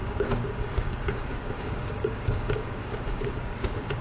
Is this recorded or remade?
remade